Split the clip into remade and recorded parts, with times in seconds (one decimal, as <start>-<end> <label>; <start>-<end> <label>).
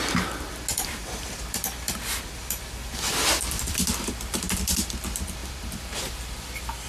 0.0-0.7 recorded; 0.7-4.8 remade; 4.8-5.4 recorded; 5.4-6.1 remade; 6.1-6.9 recorded